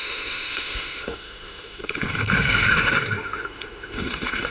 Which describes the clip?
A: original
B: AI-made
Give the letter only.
B